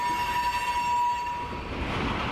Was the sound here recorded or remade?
recorded